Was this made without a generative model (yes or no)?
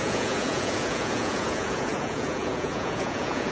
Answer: no